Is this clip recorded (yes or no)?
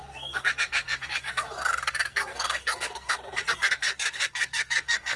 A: no